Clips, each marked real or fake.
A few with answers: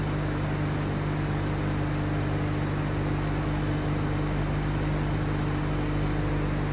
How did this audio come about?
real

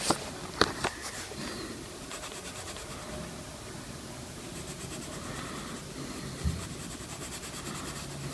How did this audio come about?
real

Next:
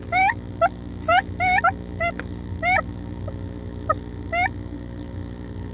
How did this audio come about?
fake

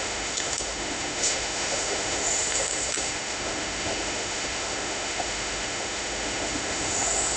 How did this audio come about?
fake